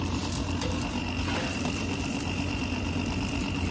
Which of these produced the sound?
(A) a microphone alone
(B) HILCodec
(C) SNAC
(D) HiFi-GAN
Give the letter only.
A